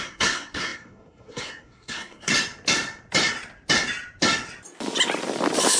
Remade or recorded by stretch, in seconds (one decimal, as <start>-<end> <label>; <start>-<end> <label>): 0.0-2.3 remade; 2.3-5.8 recorded